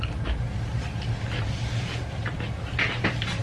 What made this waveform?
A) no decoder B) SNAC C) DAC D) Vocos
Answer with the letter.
A